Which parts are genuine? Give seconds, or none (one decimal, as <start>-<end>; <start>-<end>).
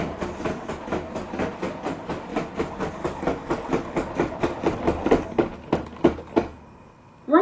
0.0-7.4